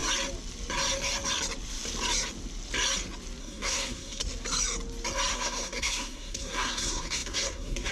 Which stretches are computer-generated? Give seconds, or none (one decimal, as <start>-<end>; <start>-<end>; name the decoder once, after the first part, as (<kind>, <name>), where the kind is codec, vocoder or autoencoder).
3.4-4.2 (codec, SNAC); 5.3-7.9